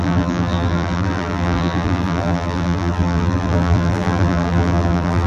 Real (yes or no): no